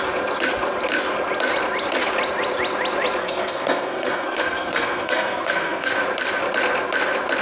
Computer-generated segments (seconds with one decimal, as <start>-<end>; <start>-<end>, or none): 3.2-5.9